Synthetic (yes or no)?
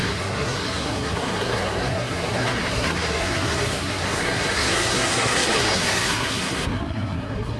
yes